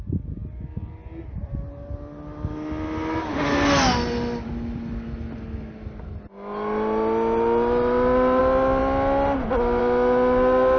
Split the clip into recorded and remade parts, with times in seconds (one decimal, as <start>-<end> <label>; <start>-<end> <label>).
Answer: 0.0-10.8 recorded